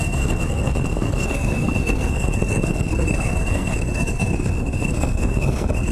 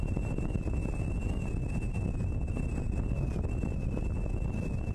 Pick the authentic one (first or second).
second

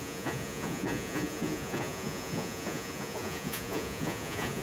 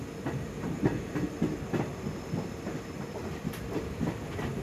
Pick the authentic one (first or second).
second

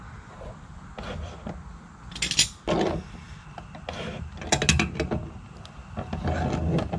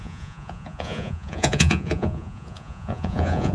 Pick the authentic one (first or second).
first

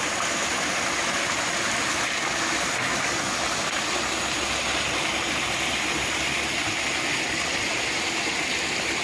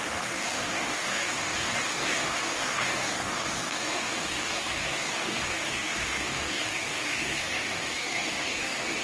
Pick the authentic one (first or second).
first